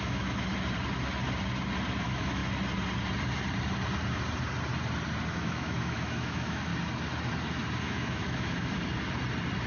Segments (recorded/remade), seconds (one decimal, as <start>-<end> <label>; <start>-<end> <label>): 0.0-0.5 remade; 0.5-2.0 recorded; 2.0-2.4 remade; 2.4-5.3 recorded; 5.3-6.7 remade; 6.7-7.8 recorded; 7.8-8.8 remade; 8.8-9.7 recorded

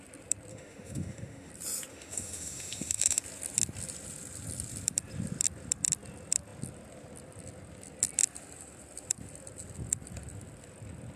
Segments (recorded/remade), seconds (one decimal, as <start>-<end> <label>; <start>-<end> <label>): 0.0-0.5 recorded; 0.5-1.5 remade; 1.5-1.9 recorded; 1.9-3.2 remade; 3.2-11.2 recorded

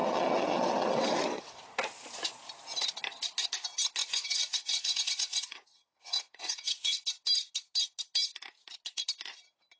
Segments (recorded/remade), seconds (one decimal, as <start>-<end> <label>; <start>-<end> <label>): 0.0-1.6 remade; 1.6-4.0 recorded; 4.0-7.0 remade; 7.0-9.8 recorded

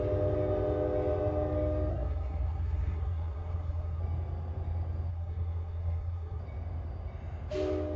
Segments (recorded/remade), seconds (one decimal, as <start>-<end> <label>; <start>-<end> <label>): 0.0-1.9 recorded; 1.9-4.0 remade; 4.0-5.1 recorded; 5.1-6.4 remade; 6.4-8.0 recorded

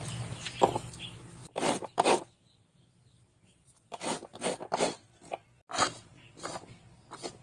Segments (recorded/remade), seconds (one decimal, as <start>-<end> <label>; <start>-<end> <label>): 0.0-1.4 recorded; 1.4-4.0 remade; 4.0-7.4 recorded

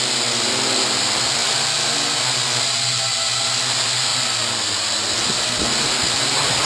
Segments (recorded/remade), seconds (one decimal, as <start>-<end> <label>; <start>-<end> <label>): 0.0-6.7 recorded